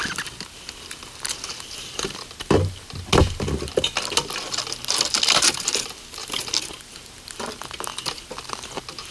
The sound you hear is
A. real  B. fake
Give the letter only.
A